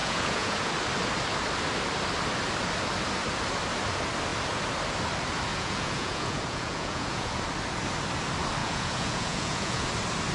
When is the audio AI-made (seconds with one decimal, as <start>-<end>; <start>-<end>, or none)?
0.0-0.7; 5.5-7.4; 8.6-9.9